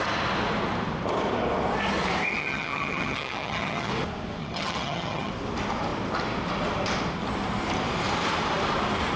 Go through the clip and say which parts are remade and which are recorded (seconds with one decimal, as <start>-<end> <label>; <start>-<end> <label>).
0.0-2.3 recorded; 2.3-3.9 remade; 3.9-4.4 recorded; 4.4-5.3 remade; 5.3-9.2 recorded